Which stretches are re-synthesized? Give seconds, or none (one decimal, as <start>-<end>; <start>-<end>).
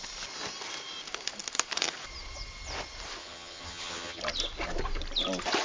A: 3.2-4.2